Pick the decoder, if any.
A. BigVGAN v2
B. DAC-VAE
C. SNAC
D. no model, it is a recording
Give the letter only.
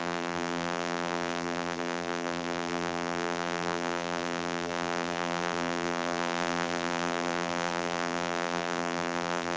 A